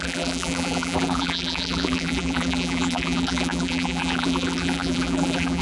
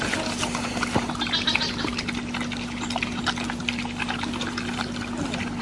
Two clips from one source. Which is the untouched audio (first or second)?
second